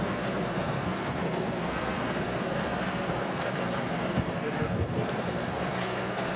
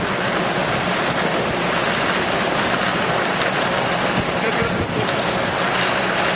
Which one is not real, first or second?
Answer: first